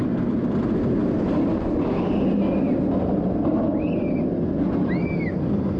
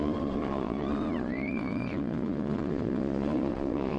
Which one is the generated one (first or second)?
second